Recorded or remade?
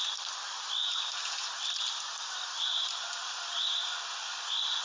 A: remade